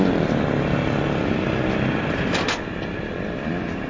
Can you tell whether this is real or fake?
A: real